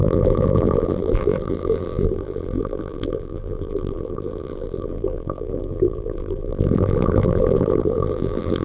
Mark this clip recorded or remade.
remade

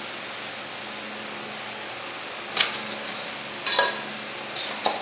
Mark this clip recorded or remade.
recorded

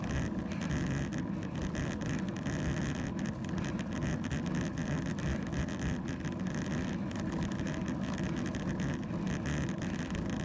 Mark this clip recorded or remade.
recorded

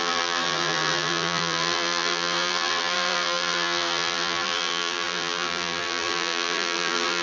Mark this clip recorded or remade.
remade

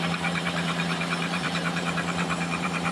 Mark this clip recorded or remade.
remade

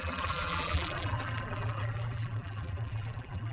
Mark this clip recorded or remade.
remade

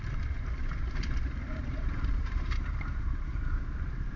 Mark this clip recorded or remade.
remade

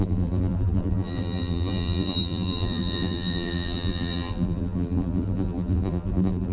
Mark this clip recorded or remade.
remade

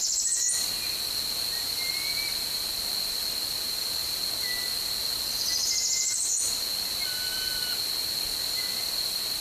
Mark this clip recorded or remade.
recorded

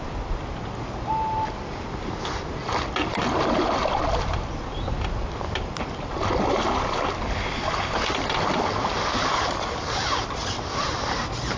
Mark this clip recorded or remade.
recorded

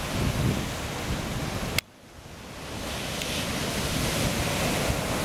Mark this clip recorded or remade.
recorded